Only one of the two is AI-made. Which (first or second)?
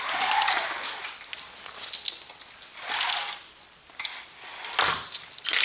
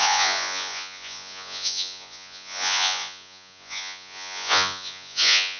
second